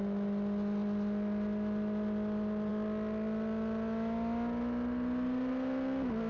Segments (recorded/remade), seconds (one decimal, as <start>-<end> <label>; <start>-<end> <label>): 0.0-6.3 recorded